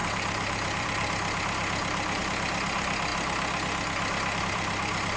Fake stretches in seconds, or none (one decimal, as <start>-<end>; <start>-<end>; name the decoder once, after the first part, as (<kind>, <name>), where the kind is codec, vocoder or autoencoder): 0.0-3.1 (vocoder, BigVGAN v2); 4.4-5.2